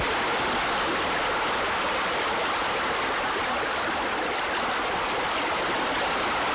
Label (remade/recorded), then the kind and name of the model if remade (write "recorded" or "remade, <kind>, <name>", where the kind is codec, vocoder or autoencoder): recorded